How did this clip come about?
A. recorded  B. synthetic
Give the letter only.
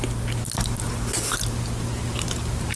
A